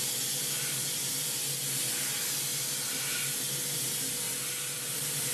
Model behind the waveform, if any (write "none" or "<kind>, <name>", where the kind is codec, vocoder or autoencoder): none